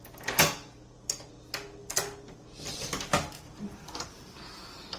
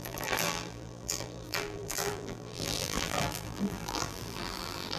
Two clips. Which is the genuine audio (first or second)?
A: first